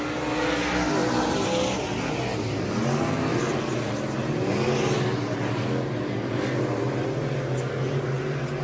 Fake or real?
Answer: real